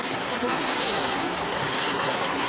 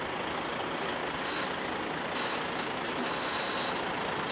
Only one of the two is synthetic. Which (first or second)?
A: first